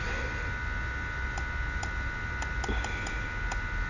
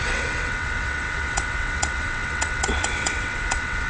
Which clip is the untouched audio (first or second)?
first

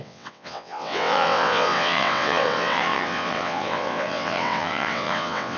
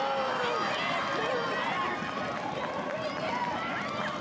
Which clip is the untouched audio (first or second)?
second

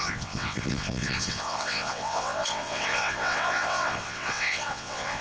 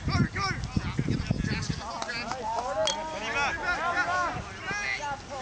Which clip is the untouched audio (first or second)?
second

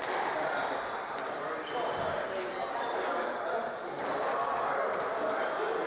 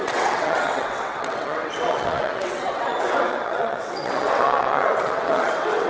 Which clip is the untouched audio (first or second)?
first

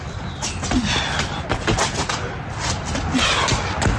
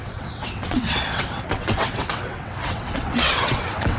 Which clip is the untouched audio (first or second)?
first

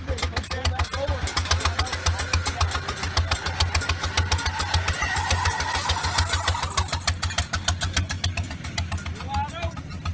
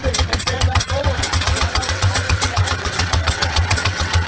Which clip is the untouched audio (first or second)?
first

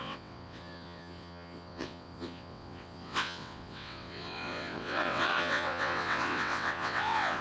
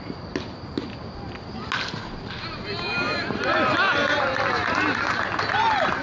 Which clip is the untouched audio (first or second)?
second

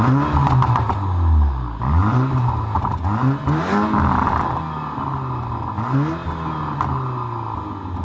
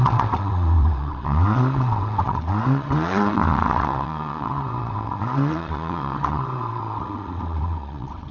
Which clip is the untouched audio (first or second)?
first